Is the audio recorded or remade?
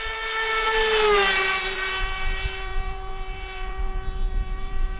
remade